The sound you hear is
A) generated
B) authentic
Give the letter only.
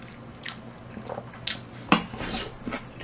B